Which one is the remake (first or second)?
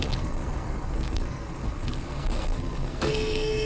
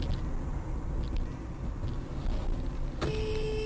first